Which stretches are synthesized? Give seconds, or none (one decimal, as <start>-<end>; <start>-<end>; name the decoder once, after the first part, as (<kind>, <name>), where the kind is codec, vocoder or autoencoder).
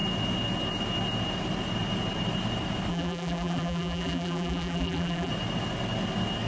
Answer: 2.9-5.3 (vocoder, BigVGAN v2)